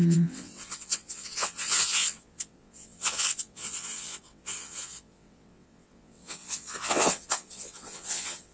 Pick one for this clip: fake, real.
fake